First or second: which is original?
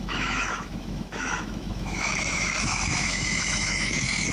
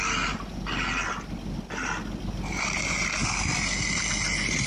second